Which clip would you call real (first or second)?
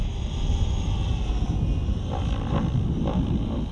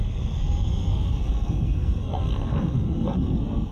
first